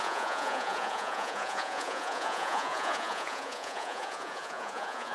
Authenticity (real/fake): fake